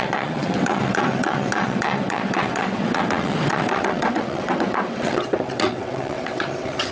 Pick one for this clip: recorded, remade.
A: remade